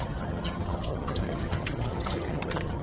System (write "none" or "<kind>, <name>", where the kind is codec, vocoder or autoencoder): vocoder, HiFi-GAN